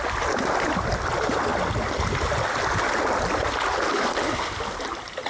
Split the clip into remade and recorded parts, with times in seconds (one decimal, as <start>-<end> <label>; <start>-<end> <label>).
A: 0.0-5.3 recorded